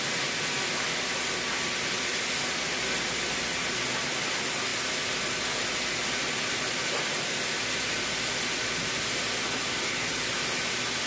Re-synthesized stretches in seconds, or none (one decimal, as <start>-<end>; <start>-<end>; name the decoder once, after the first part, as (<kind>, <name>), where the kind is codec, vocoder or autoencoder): none